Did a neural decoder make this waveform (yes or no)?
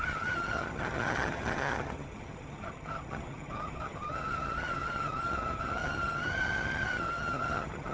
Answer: yes